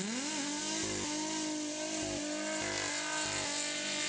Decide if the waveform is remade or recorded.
recorded